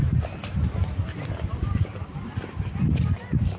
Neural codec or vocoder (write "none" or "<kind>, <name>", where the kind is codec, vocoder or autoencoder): none